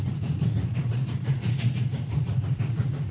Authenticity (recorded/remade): remade